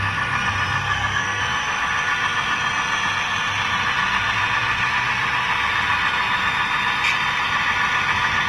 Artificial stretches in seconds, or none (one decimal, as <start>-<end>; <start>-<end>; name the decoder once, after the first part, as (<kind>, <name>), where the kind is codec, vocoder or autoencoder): 0.8-1.4 (codec, SNAC)